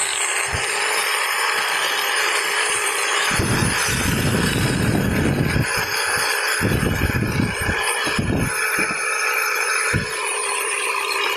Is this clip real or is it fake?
real